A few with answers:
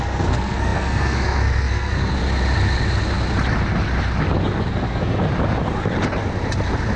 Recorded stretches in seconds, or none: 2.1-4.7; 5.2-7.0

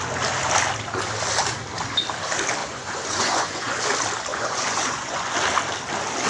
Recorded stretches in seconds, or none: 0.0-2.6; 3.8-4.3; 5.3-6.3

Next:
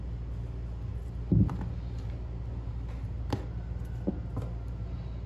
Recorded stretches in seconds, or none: 0.0-5.3

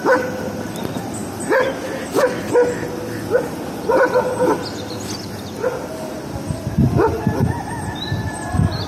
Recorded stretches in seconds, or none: 0.0-8.9

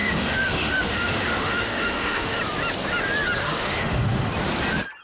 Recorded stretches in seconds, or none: 2.4-3.4; 4.3-5.0

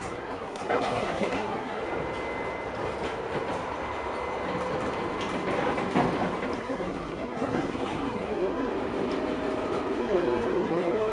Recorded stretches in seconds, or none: 1.8-6.6; 8.7-10.0